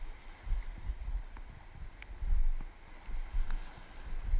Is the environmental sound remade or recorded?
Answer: recorded